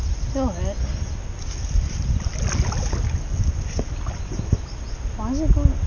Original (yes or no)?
yes